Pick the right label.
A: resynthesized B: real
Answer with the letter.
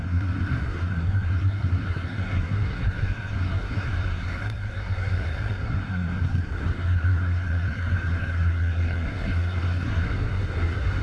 A